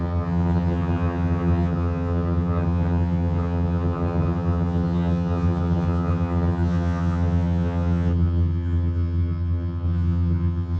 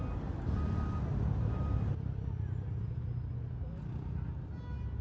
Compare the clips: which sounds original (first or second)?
second